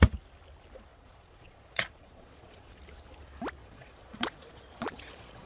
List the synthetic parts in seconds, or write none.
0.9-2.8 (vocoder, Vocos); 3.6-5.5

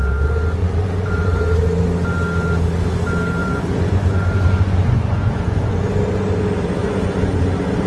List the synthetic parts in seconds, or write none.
0.6-1.4 (vocoder, Vocos); 3.4-5.8; 6.8-7.4

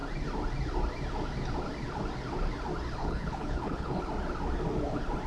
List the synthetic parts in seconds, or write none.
3.0-4.0 (codec, HILCodec)

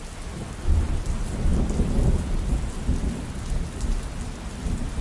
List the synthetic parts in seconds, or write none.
none

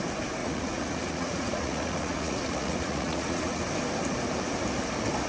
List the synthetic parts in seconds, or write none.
0.4-3.6 (vocoder, Vocos)